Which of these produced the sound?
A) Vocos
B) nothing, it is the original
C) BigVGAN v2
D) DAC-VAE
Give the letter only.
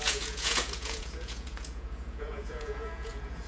A